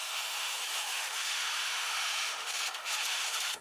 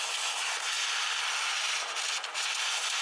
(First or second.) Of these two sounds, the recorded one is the second